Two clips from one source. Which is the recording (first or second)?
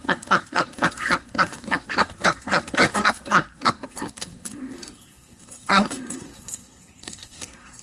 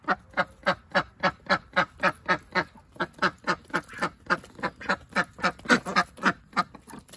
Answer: second